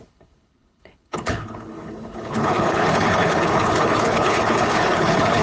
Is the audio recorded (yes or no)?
no